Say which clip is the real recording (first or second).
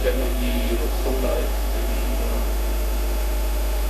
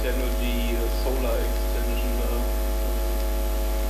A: second